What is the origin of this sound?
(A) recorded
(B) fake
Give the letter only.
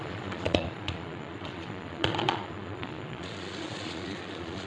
B